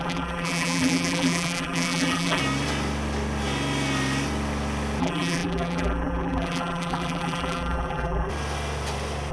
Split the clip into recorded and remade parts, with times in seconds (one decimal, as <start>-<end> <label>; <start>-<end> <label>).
0.0-2.4 remade; 2.4-5.0 recorded; 5.0-8.3 remade; 8.3-9.3 recorded